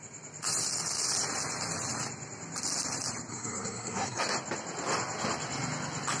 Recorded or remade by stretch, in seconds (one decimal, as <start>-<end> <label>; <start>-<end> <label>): 0.0-3.3 recorded; 3.3-4.2 remade; 4.2-6.2 recorded